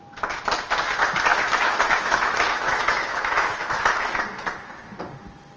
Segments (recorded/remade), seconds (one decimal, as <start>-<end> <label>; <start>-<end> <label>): 0.0-1.3 recorded; 1.3-4.2 remade; 4.2-5.6 recorded